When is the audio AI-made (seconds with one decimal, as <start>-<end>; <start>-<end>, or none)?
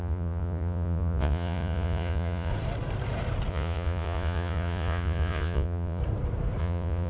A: 0.0-2.5; 3.5-6.0; 6.6-7.1